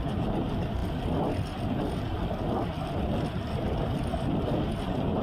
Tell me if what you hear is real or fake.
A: real